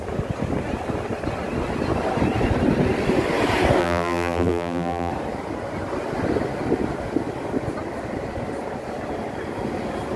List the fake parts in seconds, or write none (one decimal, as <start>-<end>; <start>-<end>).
3.8-5.1